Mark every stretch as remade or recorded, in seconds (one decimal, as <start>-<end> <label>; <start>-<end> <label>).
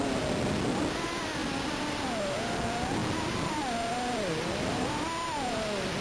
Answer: 0.0-1.4 recorded; 1.4-2.2 remade; 2.2-3.0 recorded; 3.0-6.0 remade